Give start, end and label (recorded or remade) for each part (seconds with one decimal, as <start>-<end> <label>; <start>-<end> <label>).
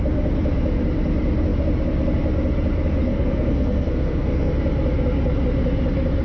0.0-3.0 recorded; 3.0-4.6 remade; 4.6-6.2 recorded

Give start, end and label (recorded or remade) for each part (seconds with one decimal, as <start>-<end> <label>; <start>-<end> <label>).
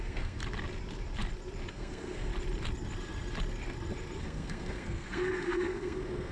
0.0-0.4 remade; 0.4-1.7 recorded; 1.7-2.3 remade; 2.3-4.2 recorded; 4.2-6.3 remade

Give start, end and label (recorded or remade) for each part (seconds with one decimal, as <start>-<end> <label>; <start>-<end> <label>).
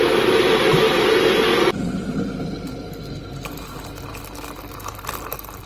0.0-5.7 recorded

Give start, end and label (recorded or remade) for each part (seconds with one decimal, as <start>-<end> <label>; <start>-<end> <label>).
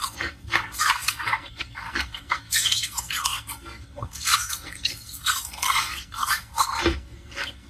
0.0-7.7 remade